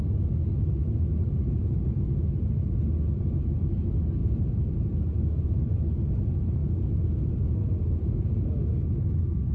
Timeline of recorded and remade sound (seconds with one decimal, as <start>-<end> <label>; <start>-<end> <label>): 0.0-1.5 recorded; 1.5-2.1 remade; 2.1-4.2 recorded; 4.2-5.6 remade; 5.6-6.6 recorded; 6.6-8.5 remade; 8.5-9.5 recorded